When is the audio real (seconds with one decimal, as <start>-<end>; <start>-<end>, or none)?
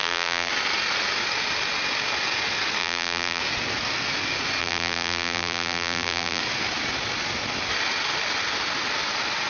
0.5-2.8; 3.4-4.6; 6.4-9.5